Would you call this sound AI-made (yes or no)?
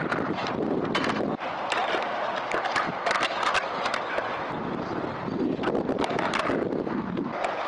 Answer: no